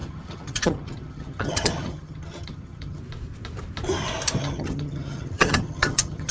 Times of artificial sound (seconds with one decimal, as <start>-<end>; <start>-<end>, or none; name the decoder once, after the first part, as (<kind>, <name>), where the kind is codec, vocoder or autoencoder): 0.0-3.0 (vocoder, HiFi-GAN); 4.4-6.3